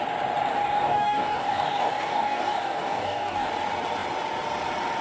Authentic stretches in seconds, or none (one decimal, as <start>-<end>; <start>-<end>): 0.0-0.5; 3.5-5.0